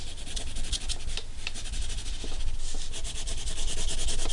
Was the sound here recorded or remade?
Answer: recorded